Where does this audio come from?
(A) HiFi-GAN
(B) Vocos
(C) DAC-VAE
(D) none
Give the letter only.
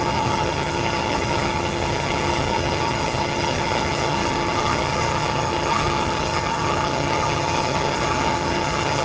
A